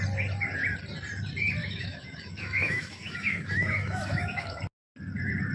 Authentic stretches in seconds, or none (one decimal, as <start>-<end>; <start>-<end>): 0.0-1.6; 4.6-5.5